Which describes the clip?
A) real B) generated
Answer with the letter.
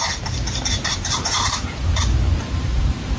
A